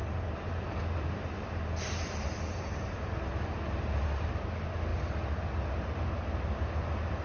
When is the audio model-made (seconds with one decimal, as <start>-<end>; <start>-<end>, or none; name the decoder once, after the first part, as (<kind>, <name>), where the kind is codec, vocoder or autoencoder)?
0.0-4.3 (vocoder, BigVGAN v2)